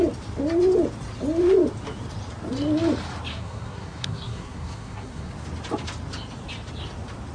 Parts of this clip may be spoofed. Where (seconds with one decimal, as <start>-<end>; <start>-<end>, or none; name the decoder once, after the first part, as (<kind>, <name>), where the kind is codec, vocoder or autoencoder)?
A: 3.3-5.3 (codec, SNAC)